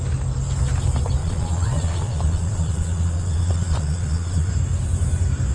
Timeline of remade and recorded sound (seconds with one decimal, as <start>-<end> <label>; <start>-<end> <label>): 0.0-1.2 recorded; 1.2-4.5 remade; 4.5-5.5 recorded